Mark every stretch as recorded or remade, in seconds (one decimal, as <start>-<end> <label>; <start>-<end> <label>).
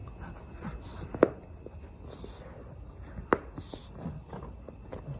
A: 0.0-5.2 recorded